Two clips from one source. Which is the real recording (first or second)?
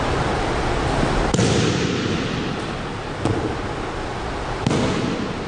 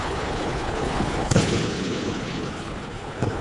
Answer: first